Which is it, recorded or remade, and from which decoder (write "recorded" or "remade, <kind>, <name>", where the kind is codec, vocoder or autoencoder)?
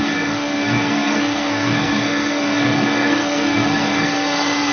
remade, codec, SNAC